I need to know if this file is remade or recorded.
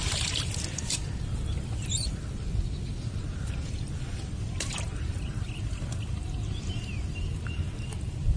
remade